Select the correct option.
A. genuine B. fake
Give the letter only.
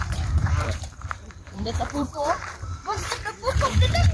B